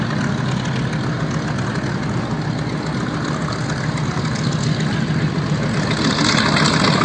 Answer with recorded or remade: recorded